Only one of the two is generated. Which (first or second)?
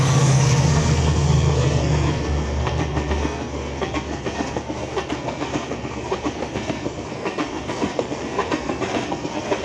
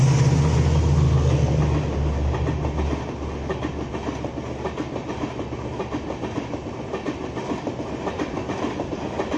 first